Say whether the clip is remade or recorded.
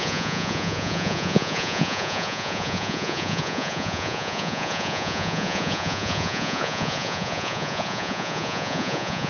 remade